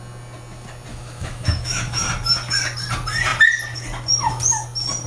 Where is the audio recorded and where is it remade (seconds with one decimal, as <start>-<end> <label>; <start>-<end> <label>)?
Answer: 0.0-0.9 recorded; 0.9-2.0 remade; 2.0-5.1 recorded